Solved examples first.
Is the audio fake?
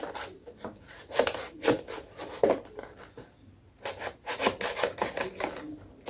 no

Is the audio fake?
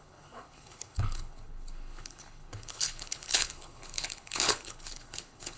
yes